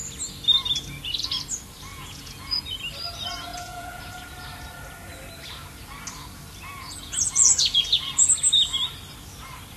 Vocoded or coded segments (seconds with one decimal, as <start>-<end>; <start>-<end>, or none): 1.9-2.8; 3.5-4.0; 6.7-8.3